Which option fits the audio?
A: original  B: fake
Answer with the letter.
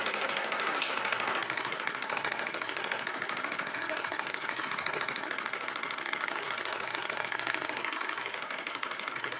B